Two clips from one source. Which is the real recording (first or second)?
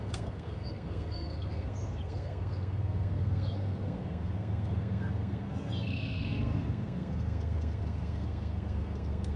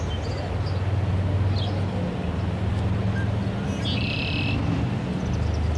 second